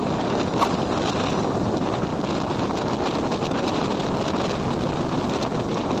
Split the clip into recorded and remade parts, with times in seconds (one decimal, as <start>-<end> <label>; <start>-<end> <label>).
0.0-6.0 recorded